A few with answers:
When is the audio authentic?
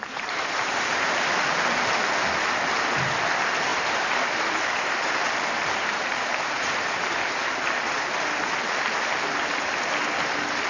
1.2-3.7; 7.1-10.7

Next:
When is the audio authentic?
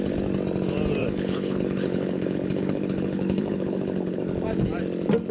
0.0-1.0; 4.2-5.3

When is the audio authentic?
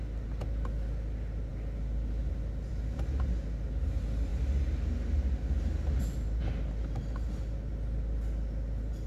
0.0-9.1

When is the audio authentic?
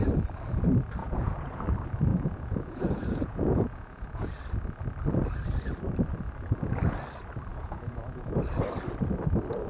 0.0-1.0; 1.6-2.1; 4.4-7.5; 8.4-9.7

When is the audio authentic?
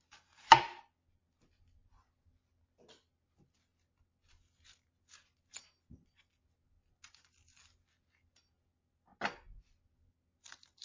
0.0-10.8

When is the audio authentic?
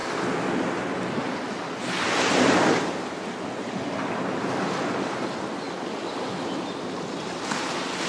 0.0-8.1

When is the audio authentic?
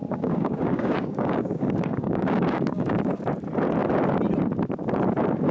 3.2-5.5